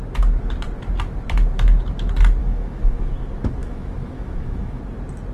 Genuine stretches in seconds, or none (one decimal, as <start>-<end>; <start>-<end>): 0.0-2.4; 3.1-3.6; 4.8-5.3

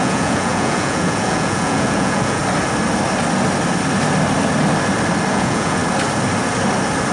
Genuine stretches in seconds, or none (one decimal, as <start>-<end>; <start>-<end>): 2.4-5.3; 5.8-7.1

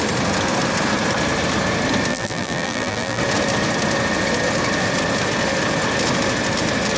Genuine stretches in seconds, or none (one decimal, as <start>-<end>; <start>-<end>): 0.0-2.1; 3.2-7.0

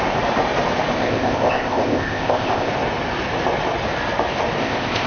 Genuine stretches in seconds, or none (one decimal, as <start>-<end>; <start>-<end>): 0.0-1.0; 2.7-4.6

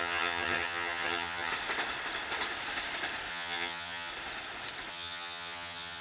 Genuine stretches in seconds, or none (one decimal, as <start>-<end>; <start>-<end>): 1.5-3.3; 4.1-4.9

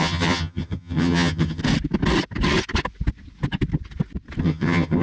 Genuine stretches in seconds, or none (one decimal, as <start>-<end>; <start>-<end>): 1.6-4.4

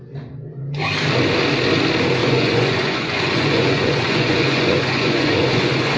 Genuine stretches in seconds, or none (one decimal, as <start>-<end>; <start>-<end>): 0.0-2.2